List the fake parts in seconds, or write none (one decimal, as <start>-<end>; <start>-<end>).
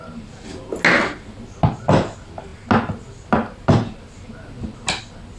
none